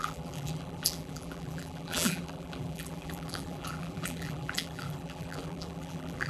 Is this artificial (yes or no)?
yes